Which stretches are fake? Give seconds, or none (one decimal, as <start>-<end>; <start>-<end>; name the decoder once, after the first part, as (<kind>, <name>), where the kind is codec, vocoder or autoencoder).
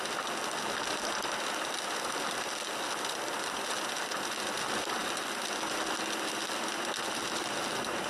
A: none